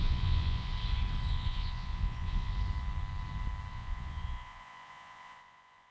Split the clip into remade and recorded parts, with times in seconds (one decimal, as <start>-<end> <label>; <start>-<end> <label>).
0.0-0.7 remade; 0.7-1.3 recorded; 1.3-2.5 remade; 2.5-3.7 recorded; 3.7-5.9 remade